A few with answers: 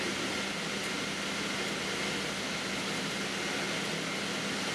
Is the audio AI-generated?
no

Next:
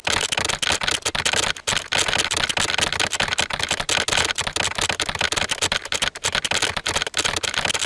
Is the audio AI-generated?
no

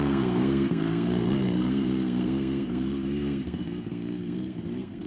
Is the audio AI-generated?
yes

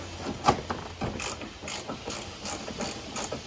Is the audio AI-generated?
no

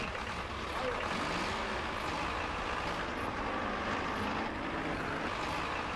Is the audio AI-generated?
no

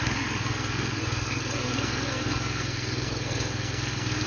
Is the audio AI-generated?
yes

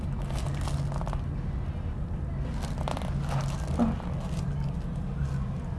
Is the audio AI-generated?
no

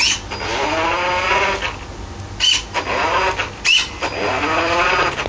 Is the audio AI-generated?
no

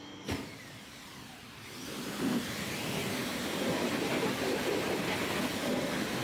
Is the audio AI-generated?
no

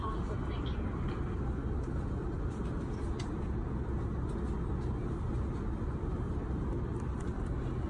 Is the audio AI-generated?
no